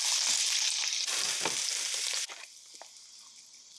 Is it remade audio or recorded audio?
recorded